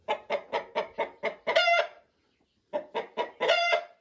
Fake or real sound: real